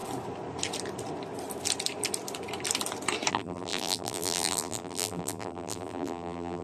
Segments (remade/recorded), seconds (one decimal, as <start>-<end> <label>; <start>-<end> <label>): 0.0-3.3 recorded; 3.3-6.6 remade

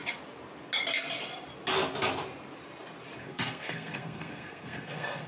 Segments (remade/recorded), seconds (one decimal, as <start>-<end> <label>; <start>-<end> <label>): 0.0-3.2 recorded; 3.2-5.3 remade

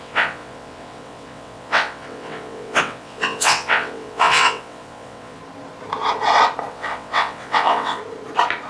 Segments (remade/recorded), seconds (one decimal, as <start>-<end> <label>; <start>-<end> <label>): 0.0-5.4 remade; 5.4-6.7 recorded; 6.7-8.0 remade; 8.0-8.7 recorded

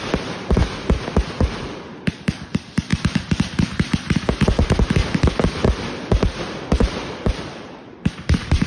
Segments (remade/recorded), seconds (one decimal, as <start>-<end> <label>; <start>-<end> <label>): 0.0-0.6 remade; 0.6-1.4 recorded; 1.4-2.9 remade; 2.9-5.9 recorded; 5.9-8.7 remade